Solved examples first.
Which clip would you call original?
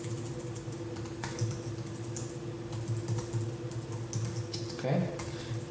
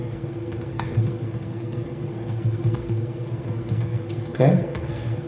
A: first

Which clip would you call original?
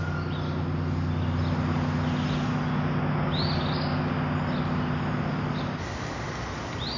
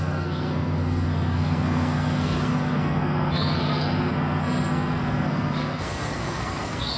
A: first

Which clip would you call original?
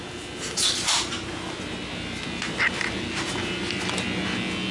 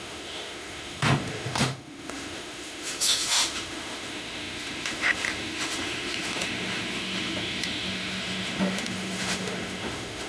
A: first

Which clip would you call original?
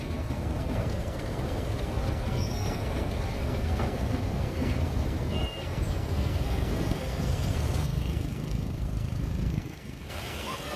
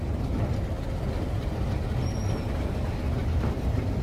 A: second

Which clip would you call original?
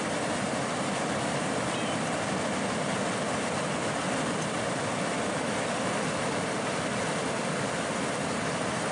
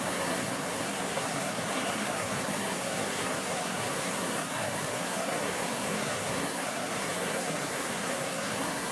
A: first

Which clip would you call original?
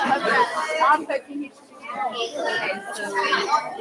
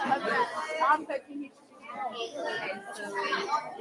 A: second